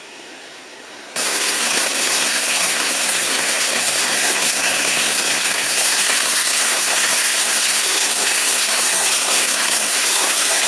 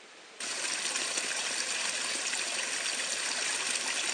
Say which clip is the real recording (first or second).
second